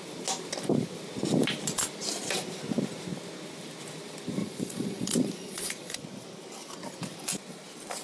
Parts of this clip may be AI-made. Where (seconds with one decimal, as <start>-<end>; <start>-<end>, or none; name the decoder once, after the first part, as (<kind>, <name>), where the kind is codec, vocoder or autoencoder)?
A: 4.4-6.0 (vocoder, Vocos)